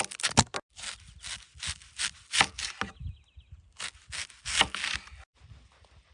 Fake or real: real